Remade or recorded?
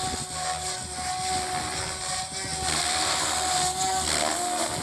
recorded